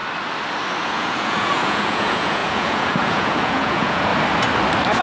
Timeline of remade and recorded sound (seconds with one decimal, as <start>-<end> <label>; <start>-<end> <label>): 0.0-0.8 recorded; 0.8-4.1 remade; 4.1-5.0 recorded